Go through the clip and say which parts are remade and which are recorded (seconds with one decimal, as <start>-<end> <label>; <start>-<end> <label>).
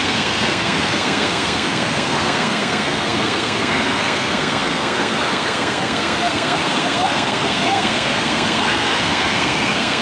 0.0-10.0 remade